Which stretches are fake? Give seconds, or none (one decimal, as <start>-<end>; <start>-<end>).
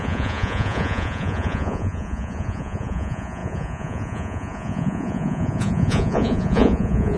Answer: 0.0-7.2